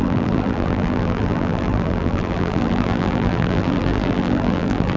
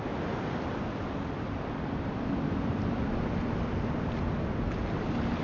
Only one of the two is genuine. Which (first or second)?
second